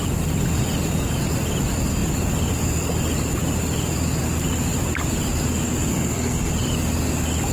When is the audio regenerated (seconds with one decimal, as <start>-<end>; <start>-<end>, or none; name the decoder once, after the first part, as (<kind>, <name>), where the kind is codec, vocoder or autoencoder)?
5.9-6.5 (codec, SNAC)